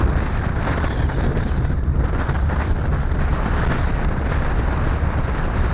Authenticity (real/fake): real